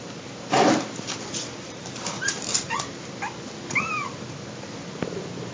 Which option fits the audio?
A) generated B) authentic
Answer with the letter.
B